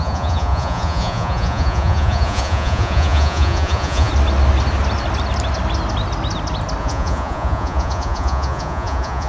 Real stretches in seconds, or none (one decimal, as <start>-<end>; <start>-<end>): 4.1-6.8